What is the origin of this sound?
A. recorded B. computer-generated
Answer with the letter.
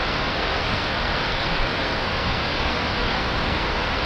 B